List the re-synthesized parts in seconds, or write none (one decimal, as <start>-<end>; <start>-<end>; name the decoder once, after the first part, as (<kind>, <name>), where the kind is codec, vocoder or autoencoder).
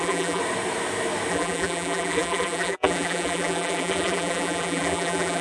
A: 0.0-0.4 (vocoder, BigVGAN v2); 1.3-5.4